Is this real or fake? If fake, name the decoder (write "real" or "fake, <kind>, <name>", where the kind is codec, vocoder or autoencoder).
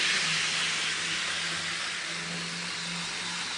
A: real